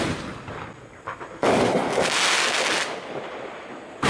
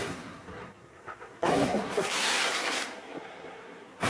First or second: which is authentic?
first